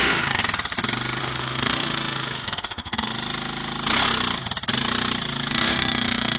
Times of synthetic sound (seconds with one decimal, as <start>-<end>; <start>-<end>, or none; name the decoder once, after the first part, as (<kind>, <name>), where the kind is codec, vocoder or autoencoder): 0.0-0.4 (autoencoder, DAC-VAE); 1.2-3.1; 5.5-6.4